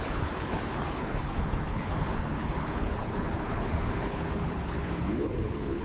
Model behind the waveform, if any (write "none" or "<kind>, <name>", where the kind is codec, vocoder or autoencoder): codec, HILCodec